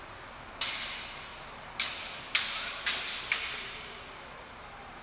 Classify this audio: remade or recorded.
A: recorded